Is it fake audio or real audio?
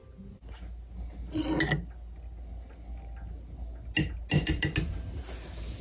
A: real